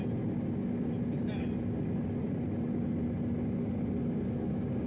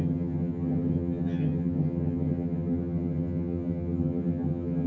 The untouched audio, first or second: first